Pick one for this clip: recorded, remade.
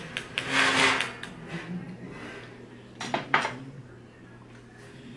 recorded